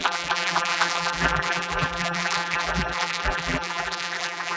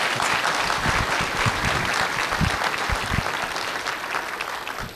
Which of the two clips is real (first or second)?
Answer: second